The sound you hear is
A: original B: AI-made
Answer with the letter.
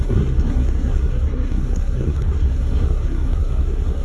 B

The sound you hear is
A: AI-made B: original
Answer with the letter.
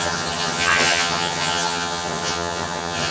A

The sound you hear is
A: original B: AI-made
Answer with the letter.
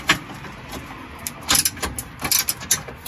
A